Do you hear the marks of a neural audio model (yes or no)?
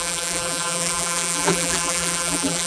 yes